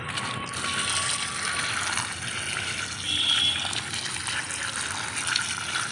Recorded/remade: recorded